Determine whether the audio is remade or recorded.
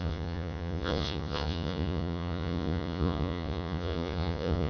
remade